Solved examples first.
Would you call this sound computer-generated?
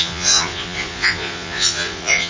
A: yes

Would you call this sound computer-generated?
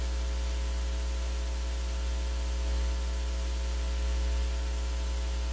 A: no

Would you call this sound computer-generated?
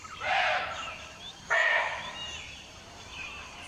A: yes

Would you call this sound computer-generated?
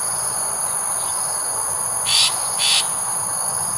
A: yes